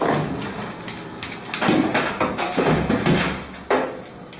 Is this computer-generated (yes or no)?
no